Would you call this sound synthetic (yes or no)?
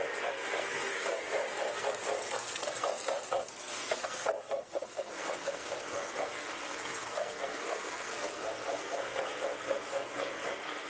yes